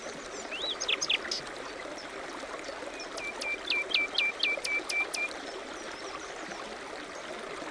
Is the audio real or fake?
real